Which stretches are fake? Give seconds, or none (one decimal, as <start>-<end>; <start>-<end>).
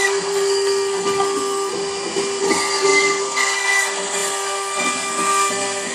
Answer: 0.0-1.7; 2.4-5.9